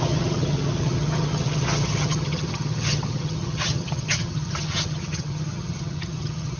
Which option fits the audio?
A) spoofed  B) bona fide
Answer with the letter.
A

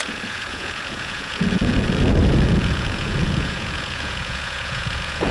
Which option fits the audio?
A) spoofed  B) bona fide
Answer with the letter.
A